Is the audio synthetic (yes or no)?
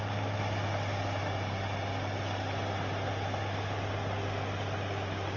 no